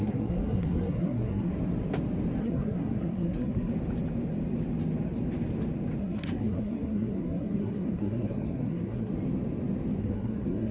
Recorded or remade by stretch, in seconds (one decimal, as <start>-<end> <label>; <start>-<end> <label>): 0.0-1.5 remade; 1.5-2.4 recorded; 2.4-3.7 remade; 3.7-6.0 recorded; 6.0-9.1 remade; 9.1-10.0 recorded; 10.0-10.7 remade